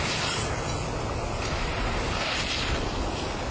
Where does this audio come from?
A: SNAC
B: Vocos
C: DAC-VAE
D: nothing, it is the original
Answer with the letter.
D